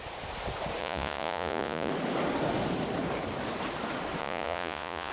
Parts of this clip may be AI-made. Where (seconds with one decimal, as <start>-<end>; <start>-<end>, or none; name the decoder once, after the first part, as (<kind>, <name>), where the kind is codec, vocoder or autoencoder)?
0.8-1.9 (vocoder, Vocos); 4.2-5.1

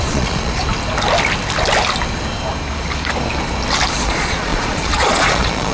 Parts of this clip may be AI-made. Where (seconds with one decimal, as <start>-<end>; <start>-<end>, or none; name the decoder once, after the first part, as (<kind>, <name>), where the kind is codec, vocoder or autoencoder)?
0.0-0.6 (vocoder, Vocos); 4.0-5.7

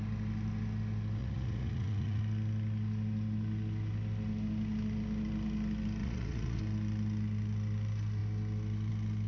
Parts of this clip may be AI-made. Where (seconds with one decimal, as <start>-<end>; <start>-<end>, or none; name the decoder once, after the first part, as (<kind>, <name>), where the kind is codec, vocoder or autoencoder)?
1.2-2.2 (vocoder, Vocos); 6.0-6.6

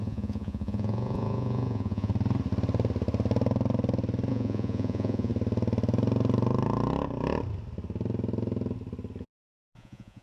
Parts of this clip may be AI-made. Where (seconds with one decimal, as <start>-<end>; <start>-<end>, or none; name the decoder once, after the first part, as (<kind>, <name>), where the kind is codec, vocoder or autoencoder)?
0.0-2.1 (vocoder, Vocos); 4.3-5.3; 9.2-10.2

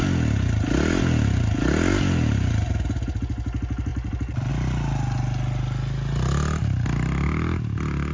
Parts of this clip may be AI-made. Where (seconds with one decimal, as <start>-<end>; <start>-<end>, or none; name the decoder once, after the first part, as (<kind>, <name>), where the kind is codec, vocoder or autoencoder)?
none